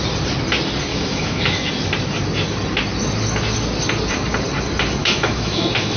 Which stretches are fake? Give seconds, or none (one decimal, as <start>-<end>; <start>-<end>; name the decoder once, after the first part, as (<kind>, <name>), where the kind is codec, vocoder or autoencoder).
0.9-1.7 (autoencoder, DAC-VAE); 5.0-6.0